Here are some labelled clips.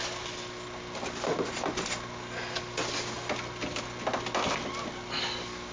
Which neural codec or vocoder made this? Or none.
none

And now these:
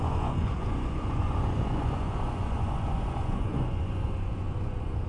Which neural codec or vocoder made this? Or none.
vocoder, Vocos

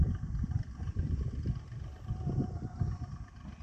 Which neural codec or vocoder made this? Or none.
none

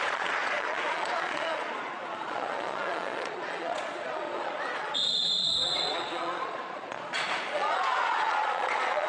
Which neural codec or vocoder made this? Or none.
vocoder, Vocos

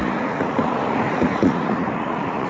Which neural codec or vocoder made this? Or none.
vocoder, Vocos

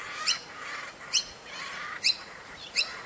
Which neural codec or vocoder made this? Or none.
vocoder, Vocos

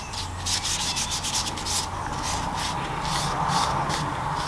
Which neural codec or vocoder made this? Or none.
none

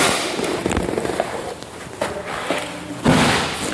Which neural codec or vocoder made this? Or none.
none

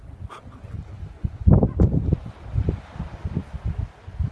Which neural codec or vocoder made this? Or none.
none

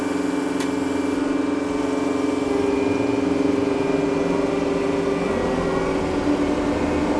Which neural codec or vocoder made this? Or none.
none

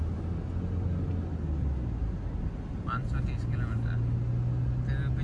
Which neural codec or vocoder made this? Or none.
none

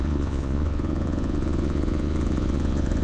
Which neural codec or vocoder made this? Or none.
vocoder, Vocos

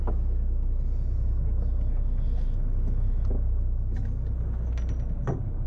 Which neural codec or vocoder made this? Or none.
none